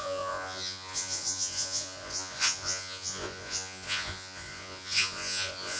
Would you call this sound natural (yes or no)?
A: no